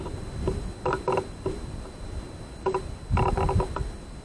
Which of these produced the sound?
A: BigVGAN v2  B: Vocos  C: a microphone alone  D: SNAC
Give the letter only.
C